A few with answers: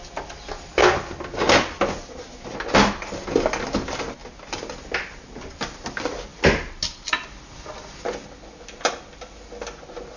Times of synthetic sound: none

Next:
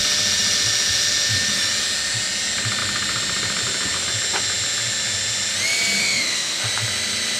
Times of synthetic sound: 6.0-6.6

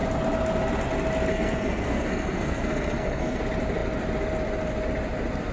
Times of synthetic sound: 1.3-3.4